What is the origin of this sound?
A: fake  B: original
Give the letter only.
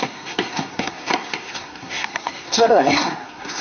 A